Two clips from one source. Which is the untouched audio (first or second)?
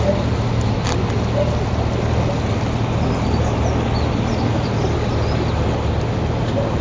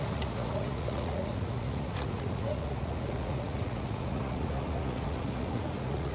first